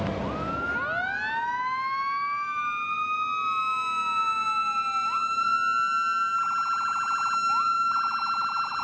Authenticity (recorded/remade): recorded